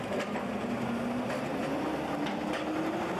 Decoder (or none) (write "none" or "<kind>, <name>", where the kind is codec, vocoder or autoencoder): none